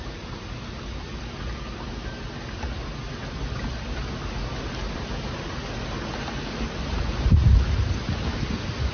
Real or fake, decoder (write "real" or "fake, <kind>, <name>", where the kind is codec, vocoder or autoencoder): real